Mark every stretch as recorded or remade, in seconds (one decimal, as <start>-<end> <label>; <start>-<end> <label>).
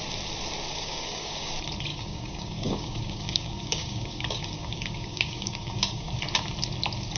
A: 0.0-0.7 recorded; 0.7-1.5 remade; 1.5-1.9 recorded; 1.9-6.2 remade; 6.2-7.2 recorded